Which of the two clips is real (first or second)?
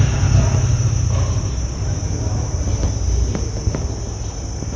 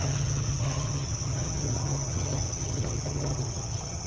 first